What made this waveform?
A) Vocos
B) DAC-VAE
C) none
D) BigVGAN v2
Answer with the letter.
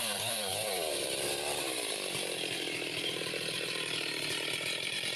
D